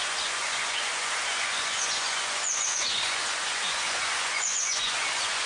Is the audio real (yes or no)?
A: no